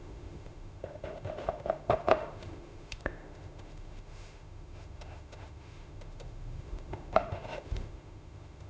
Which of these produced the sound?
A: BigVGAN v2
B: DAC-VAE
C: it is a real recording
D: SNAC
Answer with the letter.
B